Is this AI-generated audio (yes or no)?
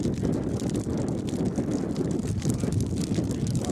no